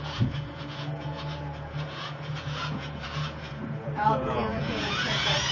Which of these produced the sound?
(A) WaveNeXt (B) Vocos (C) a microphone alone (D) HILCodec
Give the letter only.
B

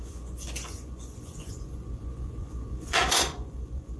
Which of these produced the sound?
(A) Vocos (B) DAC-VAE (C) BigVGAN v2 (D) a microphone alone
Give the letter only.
A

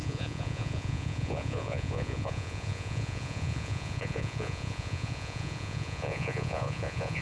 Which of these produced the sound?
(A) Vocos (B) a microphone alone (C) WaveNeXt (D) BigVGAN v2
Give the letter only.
A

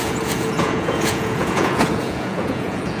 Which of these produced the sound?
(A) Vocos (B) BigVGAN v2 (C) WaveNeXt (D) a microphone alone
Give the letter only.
A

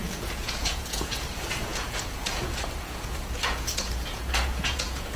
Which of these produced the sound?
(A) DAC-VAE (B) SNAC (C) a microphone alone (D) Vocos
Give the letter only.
D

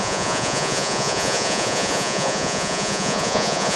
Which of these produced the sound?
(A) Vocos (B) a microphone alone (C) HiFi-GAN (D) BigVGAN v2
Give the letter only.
A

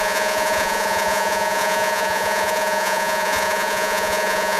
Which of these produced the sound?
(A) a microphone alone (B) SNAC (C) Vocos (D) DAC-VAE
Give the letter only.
C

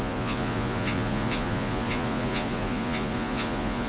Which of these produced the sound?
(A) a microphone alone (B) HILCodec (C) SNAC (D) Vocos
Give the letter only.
D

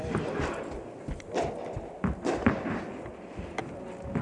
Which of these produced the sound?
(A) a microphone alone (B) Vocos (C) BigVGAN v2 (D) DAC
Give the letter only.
A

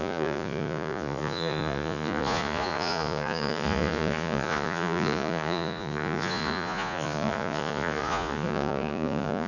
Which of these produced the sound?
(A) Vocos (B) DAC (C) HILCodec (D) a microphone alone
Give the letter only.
A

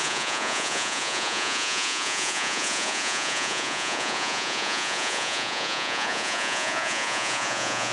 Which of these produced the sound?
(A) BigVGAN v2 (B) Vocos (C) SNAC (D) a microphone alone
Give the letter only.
B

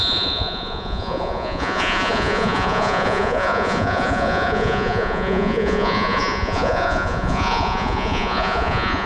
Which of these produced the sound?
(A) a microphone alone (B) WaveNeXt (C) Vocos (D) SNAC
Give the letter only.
C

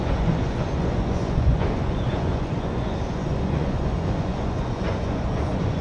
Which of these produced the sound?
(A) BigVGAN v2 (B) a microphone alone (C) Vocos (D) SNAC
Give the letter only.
C